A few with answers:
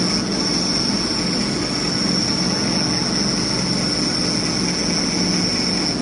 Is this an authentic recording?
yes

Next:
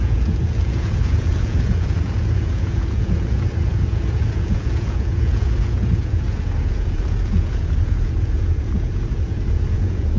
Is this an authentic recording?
no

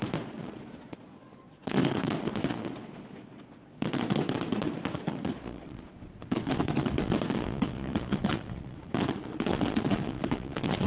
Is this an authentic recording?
no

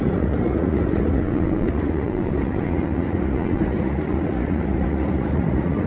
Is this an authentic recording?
no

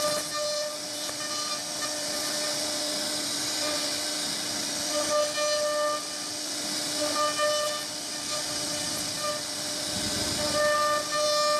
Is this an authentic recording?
yes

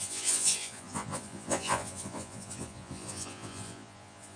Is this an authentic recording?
no